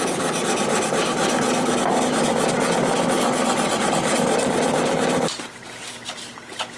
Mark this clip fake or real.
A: real